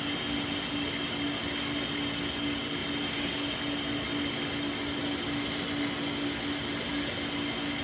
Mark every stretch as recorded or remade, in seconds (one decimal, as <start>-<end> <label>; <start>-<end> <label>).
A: 0.0-7.8 recorded